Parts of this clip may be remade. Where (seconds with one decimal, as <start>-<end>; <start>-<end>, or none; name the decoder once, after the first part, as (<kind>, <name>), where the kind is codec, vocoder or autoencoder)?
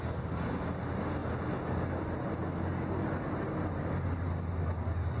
none